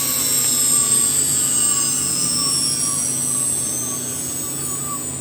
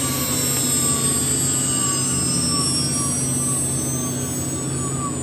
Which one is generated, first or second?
first